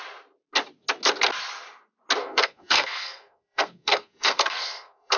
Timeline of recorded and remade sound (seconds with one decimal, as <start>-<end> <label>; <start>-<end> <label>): 0.0-2.2 recorded; 2.2-5.2 remade